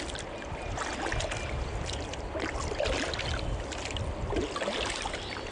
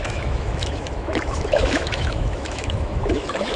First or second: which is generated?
second